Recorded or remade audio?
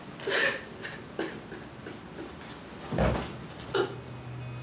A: recorded